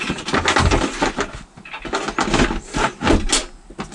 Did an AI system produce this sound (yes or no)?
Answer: no